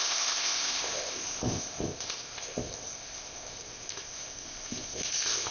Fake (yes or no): yes